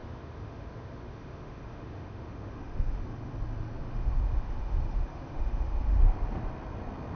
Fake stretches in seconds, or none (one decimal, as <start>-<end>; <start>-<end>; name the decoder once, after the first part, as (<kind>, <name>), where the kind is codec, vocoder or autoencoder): 0.0-3.3 (autoencoder, DAC-VAE); 3.8-6.0